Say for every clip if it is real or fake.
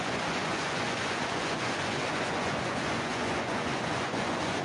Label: fake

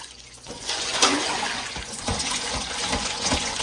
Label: fake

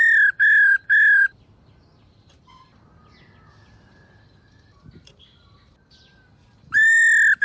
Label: real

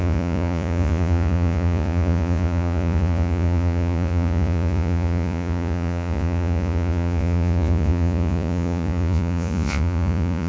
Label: fake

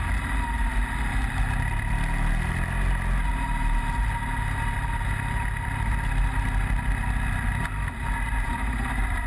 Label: real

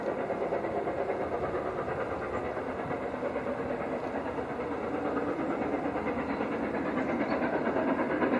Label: real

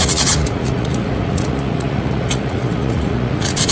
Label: fake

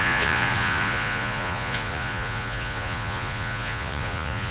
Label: fake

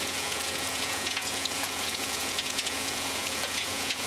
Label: fake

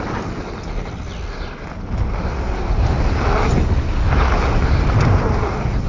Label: real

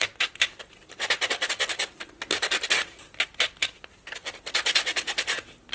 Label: real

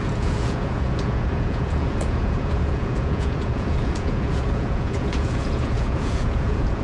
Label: fake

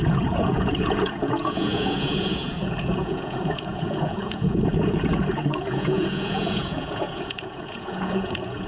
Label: fake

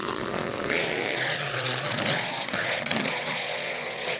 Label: fake